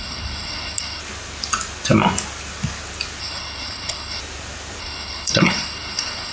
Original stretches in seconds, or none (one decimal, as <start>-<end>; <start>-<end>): 1.0-3.2; 4.2-4.8